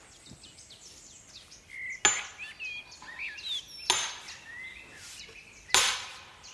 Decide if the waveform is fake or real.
real